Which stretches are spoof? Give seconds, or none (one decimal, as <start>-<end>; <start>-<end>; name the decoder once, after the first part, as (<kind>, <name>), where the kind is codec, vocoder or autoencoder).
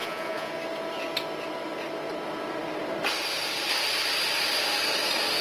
0.0-0.5 (vocoder, Vocos)